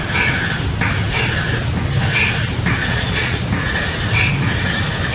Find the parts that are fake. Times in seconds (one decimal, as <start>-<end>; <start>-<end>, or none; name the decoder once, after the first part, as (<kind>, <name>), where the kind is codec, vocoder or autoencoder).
2.8-3.4 (vocoder, Vocos)